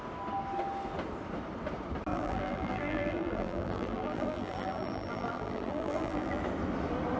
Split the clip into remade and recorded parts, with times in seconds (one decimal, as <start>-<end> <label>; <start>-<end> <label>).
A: 0.0-2.1 recorded; 2.1-6.4 remade; 6.4-7.2 recorded